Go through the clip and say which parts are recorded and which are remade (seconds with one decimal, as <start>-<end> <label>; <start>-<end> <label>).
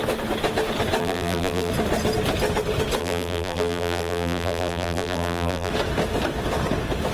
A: 0.0-1.0 recorded; 1.0-1.7 remade; 1.7-3.0 recorded; 3.0-5.7 remade; 5.7-7.1 recorded